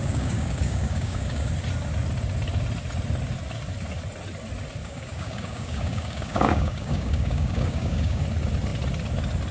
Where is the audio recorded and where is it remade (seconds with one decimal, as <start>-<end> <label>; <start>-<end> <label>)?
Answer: 0.0-1.5 remade; 1.5-4.8 recorded; 4.8-8.2 remade; 8.2-9.5 recorded